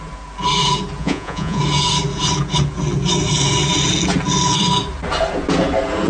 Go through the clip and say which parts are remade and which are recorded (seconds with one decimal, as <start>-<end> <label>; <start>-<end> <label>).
0.0-1.0 recorded; 1.0-1.6 remade; 1.6-6.1 recorded